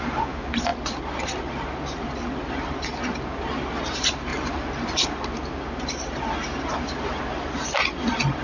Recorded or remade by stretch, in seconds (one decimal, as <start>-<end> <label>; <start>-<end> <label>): 0.0-8.4 recorded